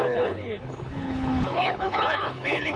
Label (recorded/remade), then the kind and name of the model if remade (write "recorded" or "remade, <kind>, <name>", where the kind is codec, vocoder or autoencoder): remade, codec, HILCodec